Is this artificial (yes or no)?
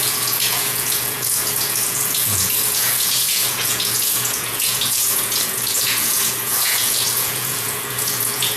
yes